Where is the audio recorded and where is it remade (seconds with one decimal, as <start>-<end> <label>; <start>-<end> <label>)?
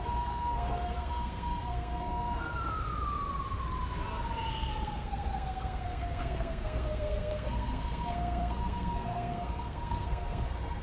0.0-2.5 remade; 2.5-4.5 recorded; 4.5-10.8 remade